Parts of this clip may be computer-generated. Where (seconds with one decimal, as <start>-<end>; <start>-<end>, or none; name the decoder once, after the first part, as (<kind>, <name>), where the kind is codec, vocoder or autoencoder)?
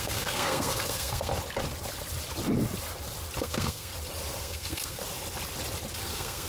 0.0-1.3 (codec, SNAC); 3.4-3.9; 4.4-5.0; 6.0-6.5